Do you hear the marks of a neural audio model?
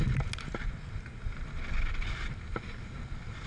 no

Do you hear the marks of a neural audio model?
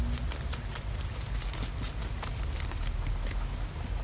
no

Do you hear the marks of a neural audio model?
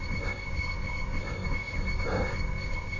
yes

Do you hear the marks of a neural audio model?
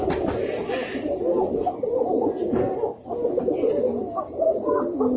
no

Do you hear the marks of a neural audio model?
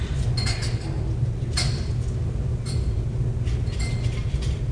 no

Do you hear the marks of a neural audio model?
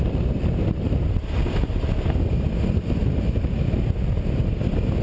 no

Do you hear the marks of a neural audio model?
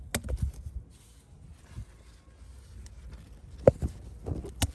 no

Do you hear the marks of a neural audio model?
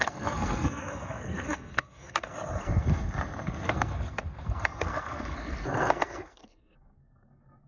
yes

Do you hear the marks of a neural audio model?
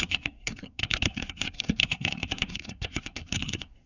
yes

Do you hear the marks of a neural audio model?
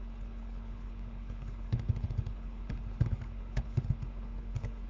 yes